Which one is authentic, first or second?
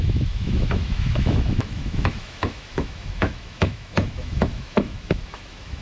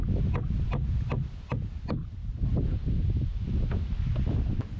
second